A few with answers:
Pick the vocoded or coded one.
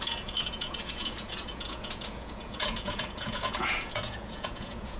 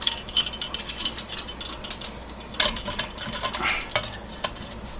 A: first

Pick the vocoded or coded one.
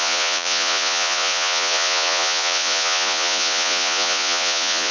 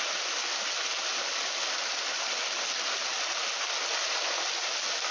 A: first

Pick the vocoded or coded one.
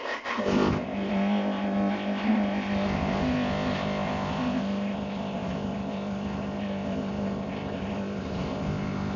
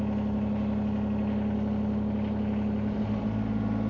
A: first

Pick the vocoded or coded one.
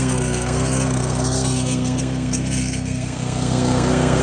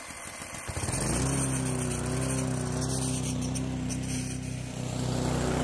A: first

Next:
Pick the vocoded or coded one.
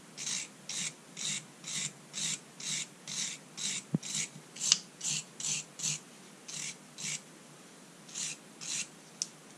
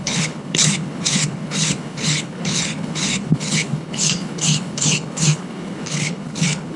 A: second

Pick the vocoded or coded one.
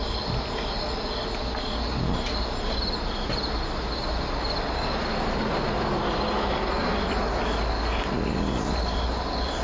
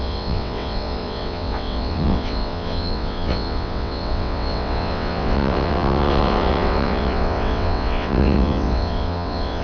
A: second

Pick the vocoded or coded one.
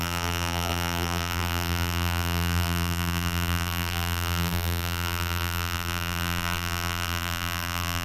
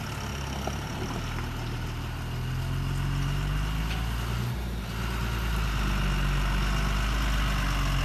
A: first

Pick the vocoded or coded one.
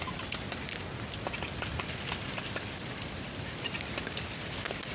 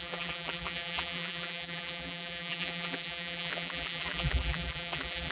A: second